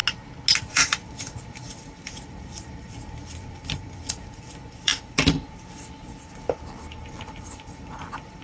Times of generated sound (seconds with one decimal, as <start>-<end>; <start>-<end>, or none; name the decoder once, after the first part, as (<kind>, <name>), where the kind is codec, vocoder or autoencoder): 0.6-8.4 (vocoder, BigVGAN v2)